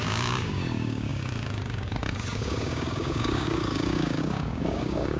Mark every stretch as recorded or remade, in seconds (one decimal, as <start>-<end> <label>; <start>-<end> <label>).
0.0-5.2 remade